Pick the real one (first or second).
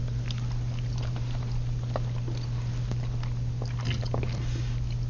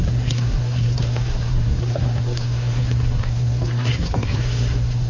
first